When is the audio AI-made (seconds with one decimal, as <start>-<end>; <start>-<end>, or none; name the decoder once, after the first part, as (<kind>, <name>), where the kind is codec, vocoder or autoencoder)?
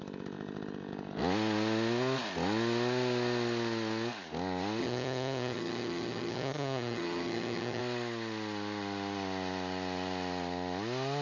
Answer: 4.8-7.8 (vocoder, HiFi-GAN)